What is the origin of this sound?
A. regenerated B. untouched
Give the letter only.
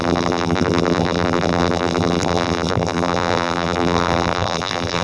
A